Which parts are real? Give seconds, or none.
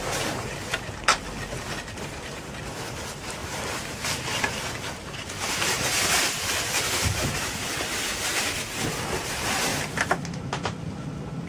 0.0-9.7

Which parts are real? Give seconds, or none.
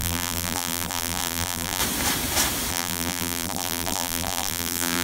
1.8-2.7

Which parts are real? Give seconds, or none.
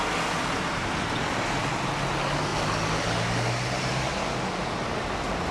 0.0-5.5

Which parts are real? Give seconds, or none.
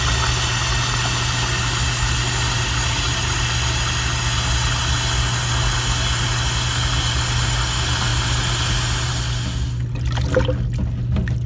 0.0-11.5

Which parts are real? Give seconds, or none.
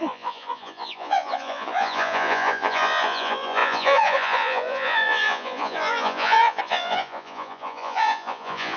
none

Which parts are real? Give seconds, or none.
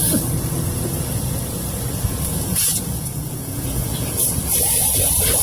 0.0-2.3; 4.2-5.4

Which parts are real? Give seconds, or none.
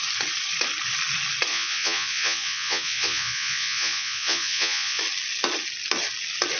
0.0-1.5; 5.0-6.6